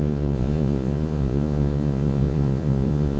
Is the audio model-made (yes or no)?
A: yes